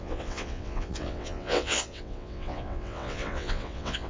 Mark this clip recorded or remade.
remade